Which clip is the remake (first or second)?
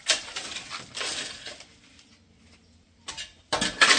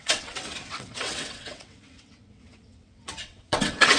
second